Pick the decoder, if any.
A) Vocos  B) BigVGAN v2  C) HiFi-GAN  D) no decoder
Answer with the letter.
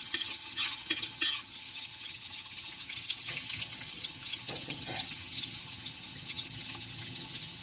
C